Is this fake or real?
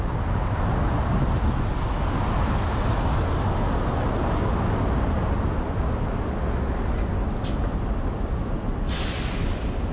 real